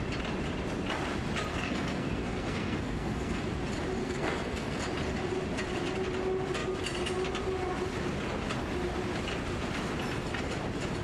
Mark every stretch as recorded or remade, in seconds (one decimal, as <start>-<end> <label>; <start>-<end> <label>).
0.0-1.5 recorded; 1.5-3.4 remade; 3.4-4.0 recorded; 4.0-4.8 remade; 4.8-11.0 recorded